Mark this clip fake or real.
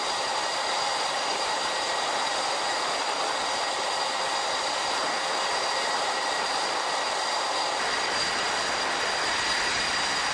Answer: real